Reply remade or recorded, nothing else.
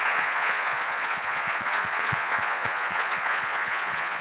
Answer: remade